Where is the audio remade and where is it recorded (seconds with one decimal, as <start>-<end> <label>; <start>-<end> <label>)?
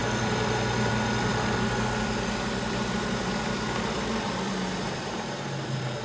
0.0-6.0 recorded